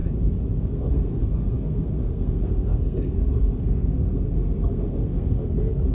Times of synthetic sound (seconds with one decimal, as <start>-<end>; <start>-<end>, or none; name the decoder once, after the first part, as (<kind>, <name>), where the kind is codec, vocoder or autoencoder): 0.6-5.9 (codec, SNAC)